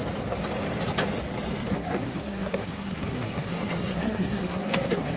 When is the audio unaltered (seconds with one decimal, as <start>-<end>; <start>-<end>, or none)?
0.0-1.7